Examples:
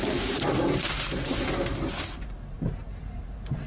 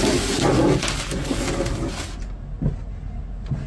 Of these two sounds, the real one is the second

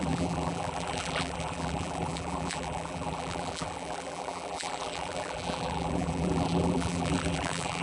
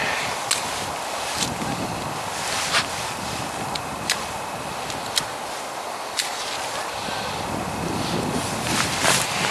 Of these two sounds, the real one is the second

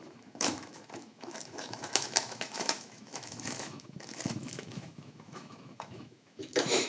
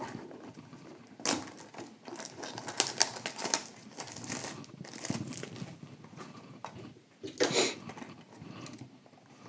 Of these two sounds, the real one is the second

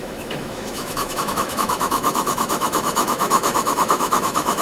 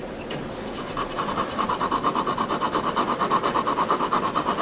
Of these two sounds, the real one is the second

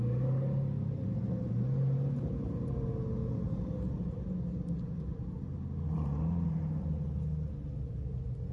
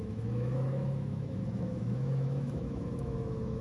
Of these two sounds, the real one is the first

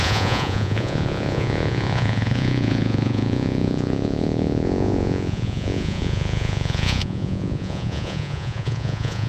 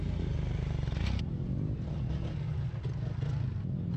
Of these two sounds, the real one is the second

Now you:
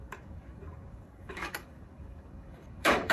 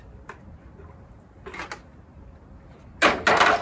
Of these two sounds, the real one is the second